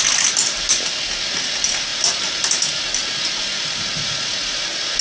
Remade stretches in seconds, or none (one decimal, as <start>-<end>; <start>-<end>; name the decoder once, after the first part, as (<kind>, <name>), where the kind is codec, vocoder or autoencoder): none